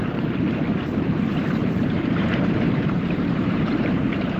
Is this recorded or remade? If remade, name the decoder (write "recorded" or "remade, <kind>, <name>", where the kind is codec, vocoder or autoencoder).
remade, vocoder, BigVGAN v2